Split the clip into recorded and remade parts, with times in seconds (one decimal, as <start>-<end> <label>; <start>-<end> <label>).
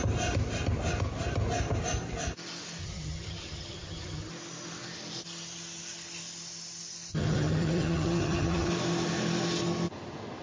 0.0-2.8 recorded; 2.8-4.3 remade; 4.3-7.1 recorded; 7.1-8.7 remade; 8.7-10.4 recorded